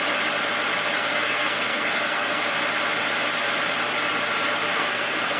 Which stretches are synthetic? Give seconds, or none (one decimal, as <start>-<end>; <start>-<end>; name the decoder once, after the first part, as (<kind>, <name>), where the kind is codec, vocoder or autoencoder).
1.0-2.4 (codec, SNAC); 4.7-5.4